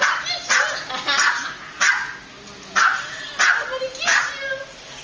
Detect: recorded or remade recorded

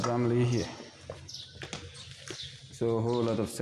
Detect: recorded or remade recorded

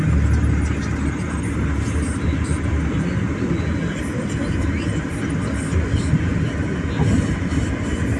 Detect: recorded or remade recorded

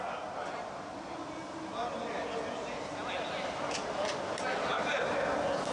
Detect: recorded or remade recorded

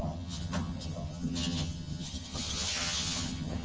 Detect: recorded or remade remade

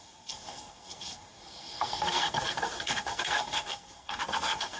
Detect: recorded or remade remade